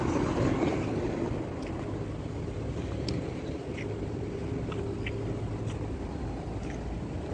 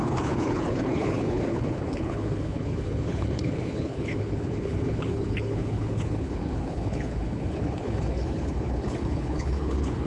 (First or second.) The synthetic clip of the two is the second